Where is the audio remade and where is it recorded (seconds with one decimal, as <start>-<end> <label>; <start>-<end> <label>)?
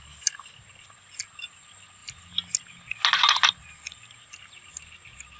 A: 0.0-5.4 recorded